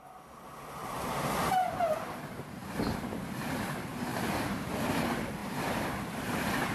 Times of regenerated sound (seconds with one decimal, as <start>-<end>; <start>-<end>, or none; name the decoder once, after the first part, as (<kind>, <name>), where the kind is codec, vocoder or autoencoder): 0.8-1.9 (vocoder, BigVGAN v2); 4.1-5.0; 5.4-6.1